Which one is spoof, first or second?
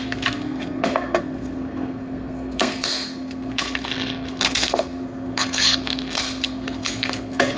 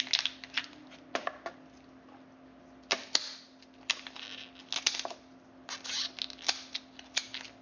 first